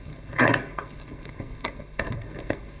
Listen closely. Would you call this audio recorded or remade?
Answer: remade